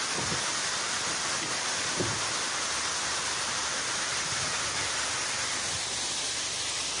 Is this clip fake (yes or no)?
no